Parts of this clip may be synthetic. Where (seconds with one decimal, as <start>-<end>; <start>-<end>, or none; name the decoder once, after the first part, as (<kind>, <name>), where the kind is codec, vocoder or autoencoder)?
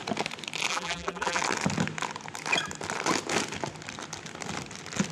0.7-1.4 (vocoder, BigVGAN v2)